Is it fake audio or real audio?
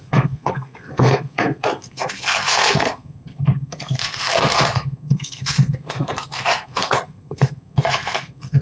fake